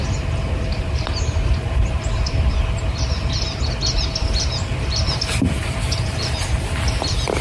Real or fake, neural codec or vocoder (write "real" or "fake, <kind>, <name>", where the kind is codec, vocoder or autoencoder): fake, vocoder, BigVGAN v2